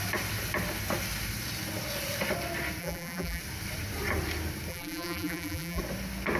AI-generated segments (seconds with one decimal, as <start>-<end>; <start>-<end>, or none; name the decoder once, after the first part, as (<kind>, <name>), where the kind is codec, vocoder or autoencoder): 2.8-3.4 (vocoder, BigVGAN v2); 4.7-5.8